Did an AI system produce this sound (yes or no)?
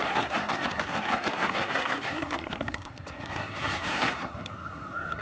yes